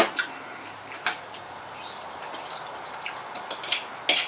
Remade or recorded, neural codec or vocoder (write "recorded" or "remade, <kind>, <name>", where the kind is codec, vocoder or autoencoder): recorded